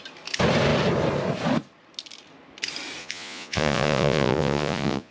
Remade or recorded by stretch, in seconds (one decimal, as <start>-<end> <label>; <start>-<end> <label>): 0.0-3.0 recorded; 3.0-5.1 remade